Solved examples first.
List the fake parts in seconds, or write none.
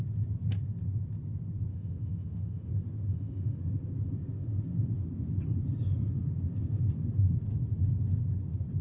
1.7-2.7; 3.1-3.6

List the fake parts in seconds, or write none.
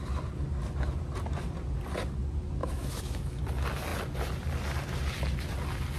2.6-3.4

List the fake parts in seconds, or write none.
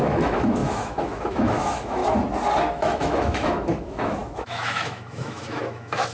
0.0-2.0; 2.7-6.1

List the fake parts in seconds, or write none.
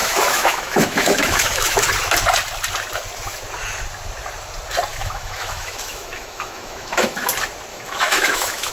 0.0-1.8; 4.9-7.3; 7.7-8.7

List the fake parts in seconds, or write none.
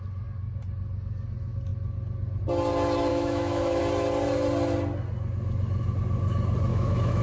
3.1-3.8; 6.7-7.2